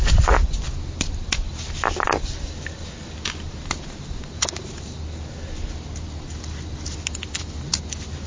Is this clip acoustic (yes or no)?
yes